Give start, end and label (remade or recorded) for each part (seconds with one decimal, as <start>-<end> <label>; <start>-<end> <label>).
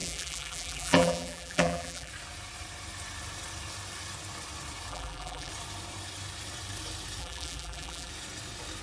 0.0-2.1 remade; 2.1-4.9 recorded; 4.9-5.5 remade; 5.5-7.2 recorded; 7.2-8.1 remade; 8.1-8.8 recorded